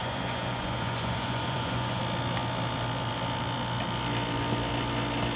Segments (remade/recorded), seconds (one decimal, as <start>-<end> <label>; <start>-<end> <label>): 0.0-2.0 remade; 2.0-5.4 recorded